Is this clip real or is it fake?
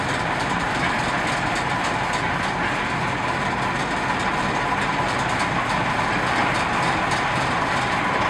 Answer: real